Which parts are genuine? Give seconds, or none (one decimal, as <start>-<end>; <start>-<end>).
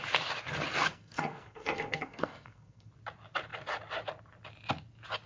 0.0-0.8; 2.9-5.3